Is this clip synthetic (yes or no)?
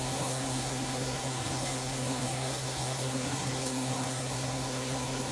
yes